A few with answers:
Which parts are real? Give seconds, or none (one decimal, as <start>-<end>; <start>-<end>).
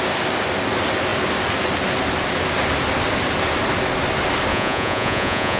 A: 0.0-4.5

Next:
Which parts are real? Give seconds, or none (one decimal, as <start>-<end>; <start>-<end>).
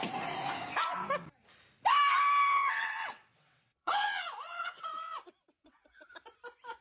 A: 0.0-2.5; 6.1-6.8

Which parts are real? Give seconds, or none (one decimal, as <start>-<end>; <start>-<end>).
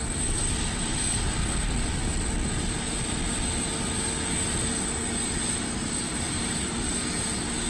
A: 2.0-5.4